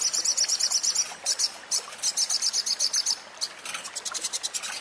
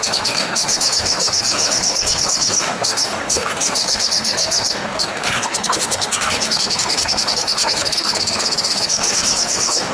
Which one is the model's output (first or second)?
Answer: second